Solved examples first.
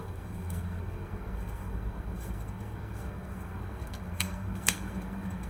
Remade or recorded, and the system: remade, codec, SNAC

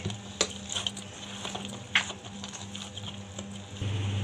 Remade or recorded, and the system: recorded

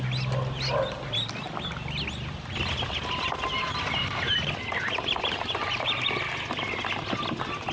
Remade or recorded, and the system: recorded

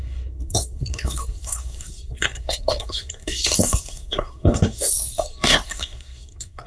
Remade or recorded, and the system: remade, codec, SNAC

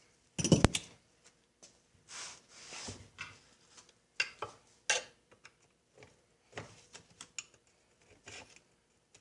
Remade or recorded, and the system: recorded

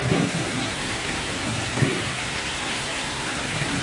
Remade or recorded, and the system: remade, codec, SNAC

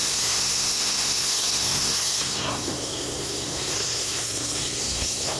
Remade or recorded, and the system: remade, codec, SNAC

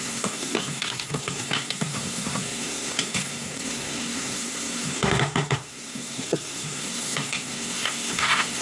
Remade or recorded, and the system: remade, codec, SNAC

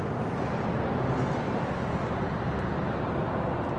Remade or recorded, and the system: recorded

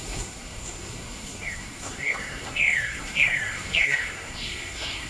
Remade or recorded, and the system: remade, codec, SNAC